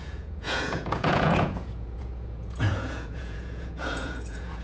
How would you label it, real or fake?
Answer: fake